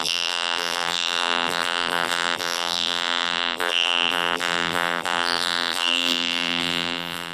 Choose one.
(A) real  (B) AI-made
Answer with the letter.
B